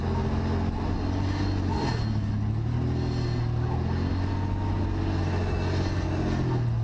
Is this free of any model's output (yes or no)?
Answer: yes